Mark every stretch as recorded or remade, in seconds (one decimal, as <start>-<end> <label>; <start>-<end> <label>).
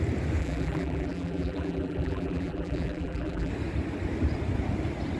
0.0-0.4 recorded; 0.4-3.5 remade; 3.5-5.2 recorded